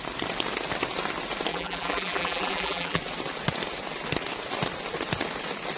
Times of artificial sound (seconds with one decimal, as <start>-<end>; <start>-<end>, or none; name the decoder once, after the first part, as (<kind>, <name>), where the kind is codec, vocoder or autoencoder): 1.5-3.0 (vocoder, BigVGAN v2)